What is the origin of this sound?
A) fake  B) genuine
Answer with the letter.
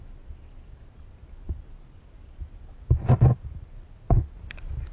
B